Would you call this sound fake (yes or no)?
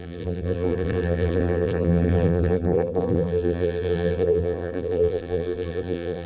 yes